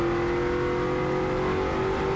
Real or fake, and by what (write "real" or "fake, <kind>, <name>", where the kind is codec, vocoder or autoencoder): real